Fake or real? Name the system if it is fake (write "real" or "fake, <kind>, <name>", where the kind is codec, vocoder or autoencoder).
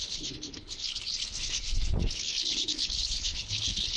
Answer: fake, codec, HILCodec